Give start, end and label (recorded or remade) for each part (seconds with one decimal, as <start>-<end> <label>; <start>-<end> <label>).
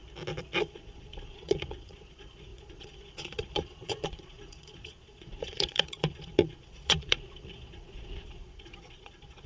0.0-0.7 recorded; 0.7-9.5 remade